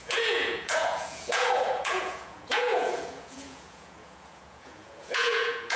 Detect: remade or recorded remade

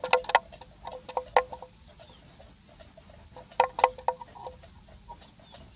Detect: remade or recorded recorded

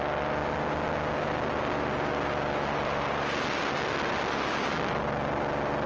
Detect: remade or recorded recorded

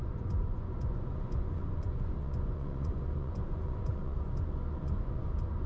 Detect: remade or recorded remade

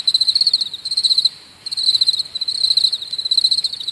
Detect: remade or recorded recorded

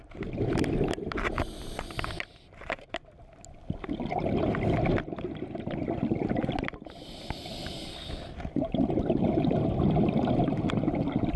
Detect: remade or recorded recorded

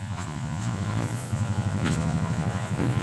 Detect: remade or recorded remade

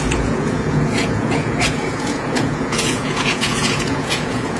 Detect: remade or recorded remade